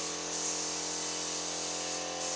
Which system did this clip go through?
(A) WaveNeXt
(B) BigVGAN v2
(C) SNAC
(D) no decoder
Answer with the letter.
D